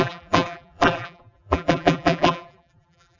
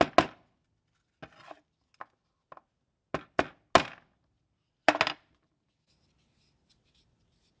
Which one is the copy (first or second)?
first